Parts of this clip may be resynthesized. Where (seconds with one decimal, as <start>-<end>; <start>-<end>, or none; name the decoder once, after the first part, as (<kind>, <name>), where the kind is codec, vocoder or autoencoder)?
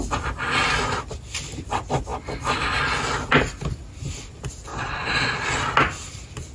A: 4.7-5.4 (vocoder, Vocos)